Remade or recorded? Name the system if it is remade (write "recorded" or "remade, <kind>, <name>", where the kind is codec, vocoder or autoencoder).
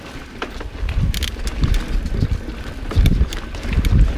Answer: recorded